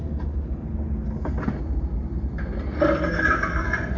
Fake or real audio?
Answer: real